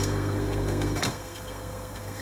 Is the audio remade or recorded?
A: remade